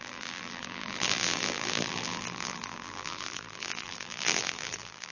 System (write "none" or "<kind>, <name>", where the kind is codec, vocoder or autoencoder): vocoder, BigVGAN v2